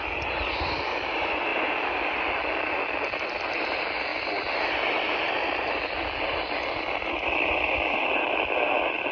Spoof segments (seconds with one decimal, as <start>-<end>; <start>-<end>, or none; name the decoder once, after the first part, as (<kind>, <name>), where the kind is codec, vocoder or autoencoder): none